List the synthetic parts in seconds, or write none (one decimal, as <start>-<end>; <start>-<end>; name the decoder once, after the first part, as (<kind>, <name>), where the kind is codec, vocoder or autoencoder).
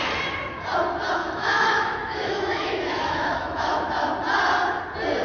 1.2-3.9 (autoencoder, DAC-VAE)